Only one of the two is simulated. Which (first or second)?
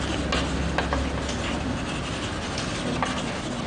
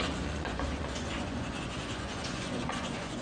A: second